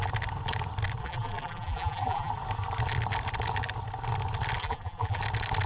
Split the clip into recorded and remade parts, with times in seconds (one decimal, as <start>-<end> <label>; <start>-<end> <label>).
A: 0.0-1.0 recorded; 1.0-2.3 remade; 2.3-4.6 recorded; 4.6-5.2 remade; 5.2-5.7 recorded